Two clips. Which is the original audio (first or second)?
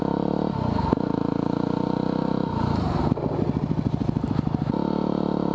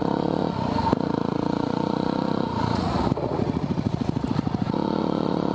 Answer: first